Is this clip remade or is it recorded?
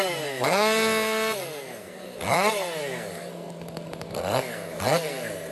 remade